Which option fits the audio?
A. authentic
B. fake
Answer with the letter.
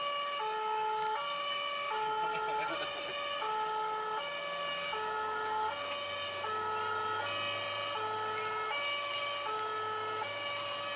A